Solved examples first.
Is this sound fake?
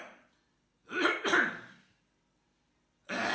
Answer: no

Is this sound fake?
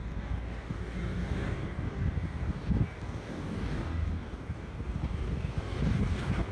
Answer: yes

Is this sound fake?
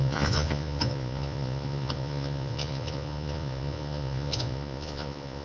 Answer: yes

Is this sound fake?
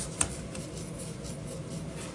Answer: no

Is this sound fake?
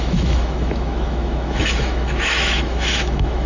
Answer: yes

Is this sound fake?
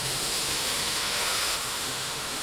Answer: yes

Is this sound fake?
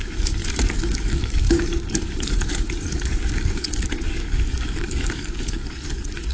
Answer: yes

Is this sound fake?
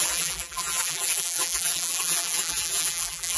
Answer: yes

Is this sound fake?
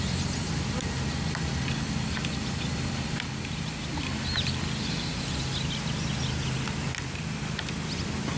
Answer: no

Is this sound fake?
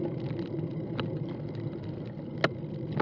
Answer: no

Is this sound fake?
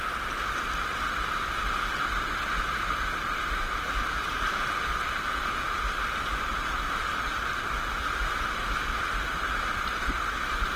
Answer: no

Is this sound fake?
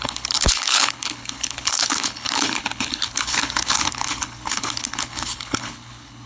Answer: yes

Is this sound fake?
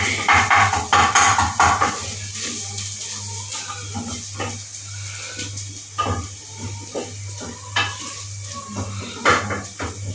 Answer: no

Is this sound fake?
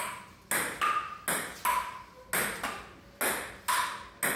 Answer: no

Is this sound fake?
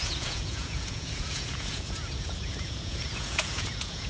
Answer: yes